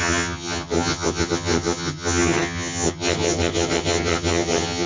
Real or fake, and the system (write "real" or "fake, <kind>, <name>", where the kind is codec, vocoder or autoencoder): fake, vocoder, HiFi-GAN